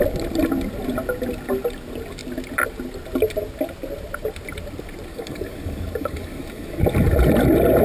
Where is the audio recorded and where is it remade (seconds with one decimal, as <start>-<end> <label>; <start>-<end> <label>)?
0.0-5.1 recorded; 5.1-6.8 remade; 6.8-7.8 recorded